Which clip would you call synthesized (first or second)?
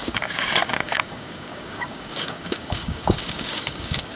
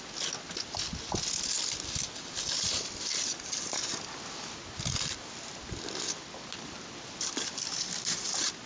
first